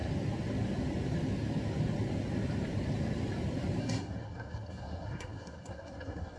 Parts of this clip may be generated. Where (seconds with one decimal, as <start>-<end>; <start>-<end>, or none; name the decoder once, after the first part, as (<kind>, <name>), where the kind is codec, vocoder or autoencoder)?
3.8-6.4 (codec, SNAC)